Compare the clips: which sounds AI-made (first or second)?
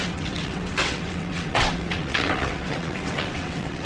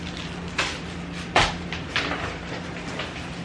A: first